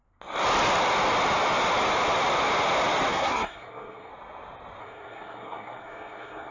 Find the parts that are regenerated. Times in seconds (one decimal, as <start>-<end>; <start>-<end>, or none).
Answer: 3.1-4.1; 4.8-6.5